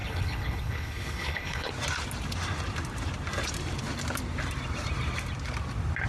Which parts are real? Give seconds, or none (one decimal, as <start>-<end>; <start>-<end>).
1.7-6.1